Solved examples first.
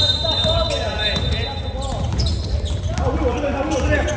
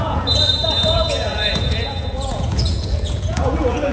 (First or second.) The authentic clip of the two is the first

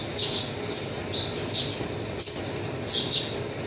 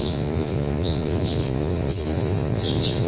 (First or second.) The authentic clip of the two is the first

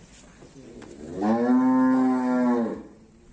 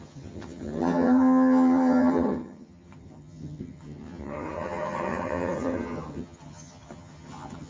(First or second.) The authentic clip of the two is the first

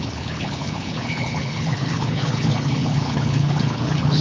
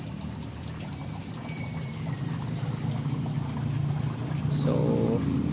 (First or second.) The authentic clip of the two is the second